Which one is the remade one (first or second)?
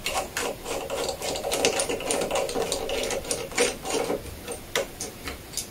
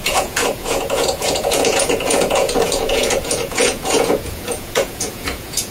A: second